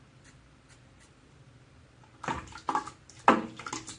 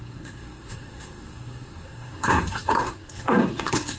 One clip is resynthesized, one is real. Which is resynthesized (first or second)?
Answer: second